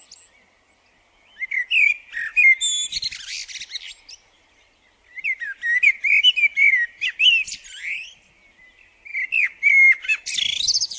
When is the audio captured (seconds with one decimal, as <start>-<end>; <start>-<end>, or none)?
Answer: 0.0-11.0